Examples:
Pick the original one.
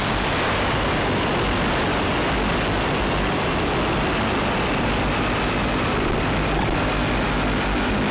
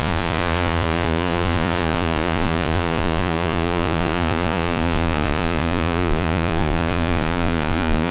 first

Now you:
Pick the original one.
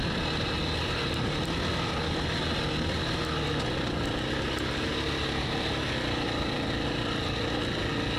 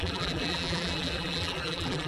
first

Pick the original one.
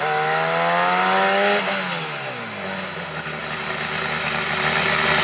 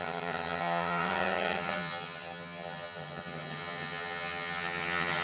first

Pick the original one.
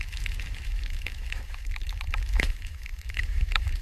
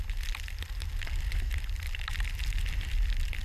second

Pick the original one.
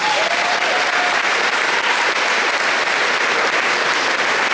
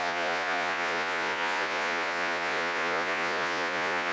first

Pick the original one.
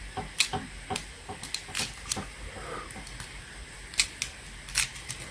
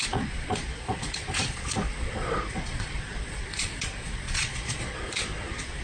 first